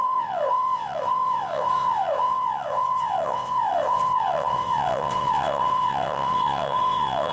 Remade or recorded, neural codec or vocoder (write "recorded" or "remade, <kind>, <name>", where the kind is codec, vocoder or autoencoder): remade, vocoder, WaveNeXt